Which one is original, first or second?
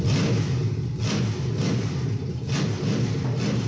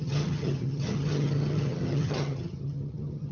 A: first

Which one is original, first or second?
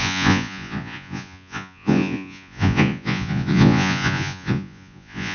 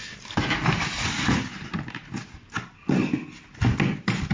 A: second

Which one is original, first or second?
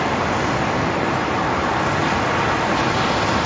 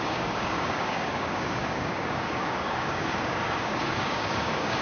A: first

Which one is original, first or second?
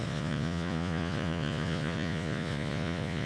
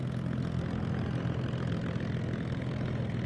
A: second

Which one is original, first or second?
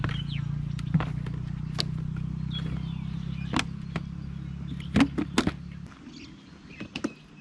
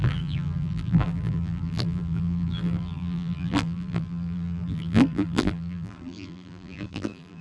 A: first